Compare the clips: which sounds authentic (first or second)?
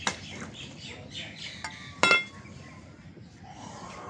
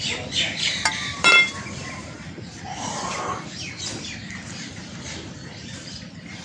first